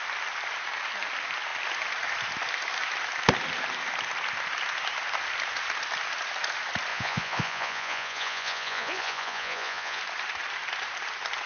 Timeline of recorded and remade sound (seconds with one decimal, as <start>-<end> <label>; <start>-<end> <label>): 0.0-6.9 recorded; 6.9-10.0 remade; 10.0-11.5 recorded